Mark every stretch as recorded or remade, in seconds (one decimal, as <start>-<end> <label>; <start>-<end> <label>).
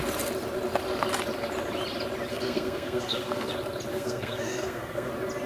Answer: 0.0-2.3 recorded; 2.3-3.5 remade; 3.5-3.9 recorded; 3.9-5.1 remade; 5.1-5.5 recorded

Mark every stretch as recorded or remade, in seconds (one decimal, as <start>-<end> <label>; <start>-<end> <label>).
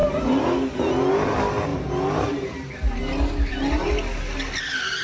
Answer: 0.0-5.0 recorded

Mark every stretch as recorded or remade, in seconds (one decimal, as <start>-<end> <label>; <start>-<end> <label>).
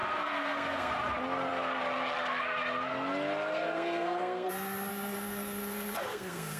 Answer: 0.0-0.9 remade; 0.9-3.5 recorded; 3.5-4.5 remade; 4.5-4.9 recorded; 4.9-6.6 remade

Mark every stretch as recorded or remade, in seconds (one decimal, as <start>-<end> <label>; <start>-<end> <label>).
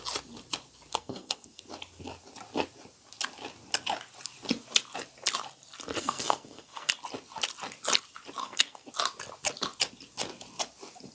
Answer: 0.0-0.9 recorded; 0.9-1.6 remade; 1.6-6.0 recorded; 6.0-6.9 remade; 6.9-8.4 recorded; 8.4-8.9 remade; 8.9-11.1 recorded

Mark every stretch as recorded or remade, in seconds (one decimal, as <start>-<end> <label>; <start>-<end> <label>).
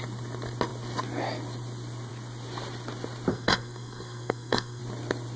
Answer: 0.0-3.3 recorded; 3.3-4.8 remade; 4.8-5.4 recorded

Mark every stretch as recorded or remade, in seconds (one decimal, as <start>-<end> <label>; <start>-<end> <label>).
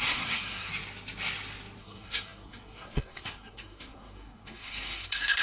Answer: 0.0-0.7 remade; 0.7-1.8 recorded; 1.8-5.4 remade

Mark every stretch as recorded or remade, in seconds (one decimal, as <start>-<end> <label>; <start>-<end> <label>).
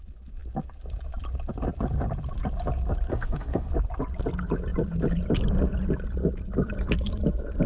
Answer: 0.0-3.1 recorded; 3.1-3.7 remade; 3.7-7.7 recorded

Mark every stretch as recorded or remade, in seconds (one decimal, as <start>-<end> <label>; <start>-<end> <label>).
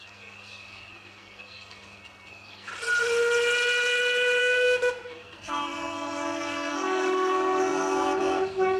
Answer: 0.0-2.7 remade; 2.7-4.4 recorded; 4.4-8.8 remade